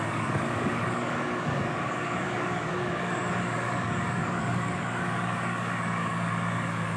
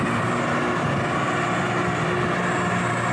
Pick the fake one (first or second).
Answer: first